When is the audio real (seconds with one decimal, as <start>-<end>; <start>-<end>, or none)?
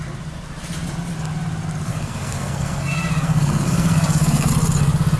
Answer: 0.0-1.9; 4.5-5.2